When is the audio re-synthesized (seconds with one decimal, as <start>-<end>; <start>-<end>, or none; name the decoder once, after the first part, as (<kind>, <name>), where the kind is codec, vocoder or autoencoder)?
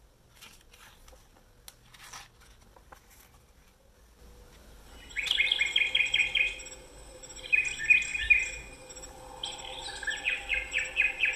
none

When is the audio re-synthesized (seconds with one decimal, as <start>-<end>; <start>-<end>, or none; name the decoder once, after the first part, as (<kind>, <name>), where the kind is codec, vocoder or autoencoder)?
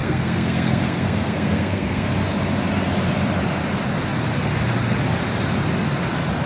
0.0-2.1 (codec, SNAC)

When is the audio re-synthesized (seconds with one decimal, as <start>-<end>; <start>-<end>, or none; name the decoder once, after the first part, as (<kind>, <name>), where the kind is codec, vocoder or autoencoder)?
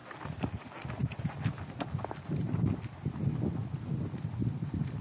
none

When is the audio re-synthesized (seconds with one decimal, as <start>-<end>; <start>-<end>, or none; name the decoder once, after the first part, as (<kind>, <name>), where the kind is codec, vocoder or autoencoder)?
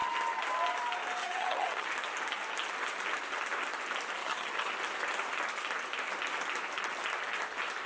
1.2-1.9 (vocoder, HiFi-GAN); 4.2-4.7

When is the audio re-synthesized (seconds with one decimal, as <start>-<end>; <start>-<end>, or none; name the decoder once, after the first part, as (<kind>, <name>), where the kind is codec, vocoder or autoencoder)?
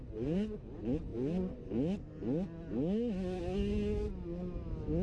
none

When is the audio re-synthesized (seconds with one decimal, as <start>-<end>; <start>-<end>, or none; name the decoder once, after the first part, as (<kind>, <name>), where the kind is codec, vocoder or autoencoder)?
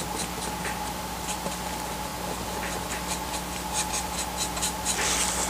none